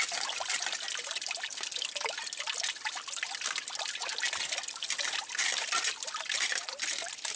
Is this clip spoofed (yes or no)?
no